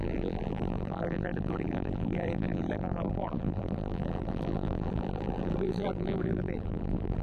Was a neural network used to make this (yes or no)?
yes